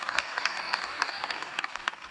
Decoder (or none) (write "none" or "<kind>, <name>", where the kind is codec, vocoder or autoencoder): codec, DAC